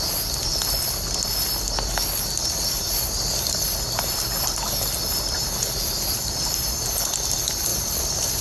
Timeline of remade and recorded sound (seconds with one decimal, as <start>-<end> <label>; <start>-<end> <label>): 0.0-7.7 recorded; 7.7-8.4 remade